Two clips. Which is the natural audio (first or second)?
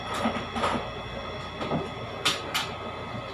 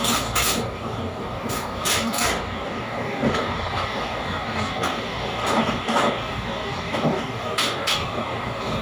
first